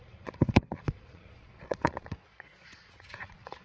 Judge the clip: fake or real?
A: fake